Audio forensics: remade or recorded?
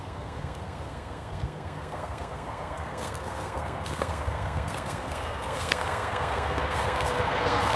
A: remade